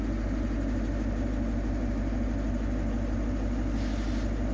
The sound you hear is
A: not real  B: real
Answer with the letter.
B